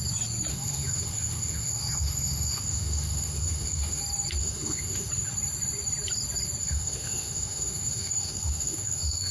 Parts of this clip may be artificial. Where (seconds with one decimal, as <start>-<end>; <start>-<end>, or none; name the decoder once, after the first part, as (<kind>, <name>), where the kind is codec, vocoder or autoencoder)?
0.5-4.0 (autoencoder, DAC-VAE); 4.4-5.1; 6.6-9.3